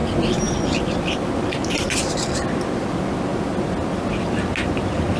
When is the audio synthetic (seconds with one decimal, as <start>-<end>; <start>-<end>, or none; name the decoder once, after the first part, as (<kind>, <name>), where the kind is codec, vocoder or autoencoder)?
none